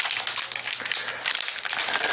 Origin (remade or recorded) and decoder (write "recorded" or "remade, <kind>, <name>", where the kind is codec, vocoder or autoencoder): recorded